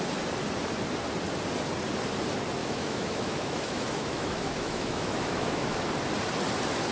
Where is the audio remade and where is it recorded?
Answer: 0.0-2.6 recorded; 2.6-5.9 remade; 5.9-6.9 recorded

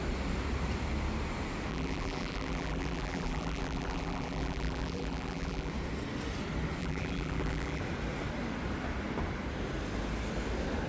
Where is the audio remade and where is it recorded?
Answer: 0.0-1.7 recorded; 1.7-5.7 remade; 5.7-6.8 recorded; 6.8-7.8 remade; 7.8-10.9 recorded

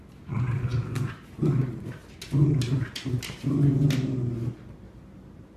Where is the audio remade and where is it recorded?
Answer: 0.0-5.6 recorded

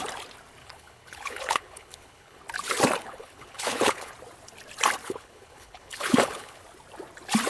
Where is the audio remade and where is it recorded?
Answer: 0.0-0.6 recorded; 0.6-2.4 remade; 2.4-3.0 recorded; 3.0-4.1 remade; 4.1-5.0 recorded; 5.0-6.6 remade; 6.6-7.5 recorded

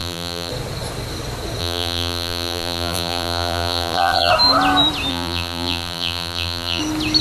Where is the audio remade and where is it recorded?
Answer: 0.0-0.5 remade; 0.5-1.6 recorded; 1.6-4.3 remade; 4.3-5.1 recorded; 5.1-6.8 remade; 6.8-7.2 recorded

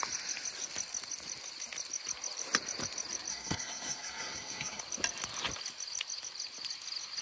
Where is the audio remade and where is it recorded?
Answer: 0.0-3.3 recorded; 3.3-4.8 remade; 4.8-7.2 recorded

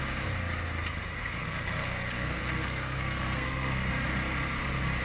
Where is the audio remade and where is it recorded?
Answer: 0.0-1.4 recorded; 1.4-3.9 remade; 3.9-5.0 recorded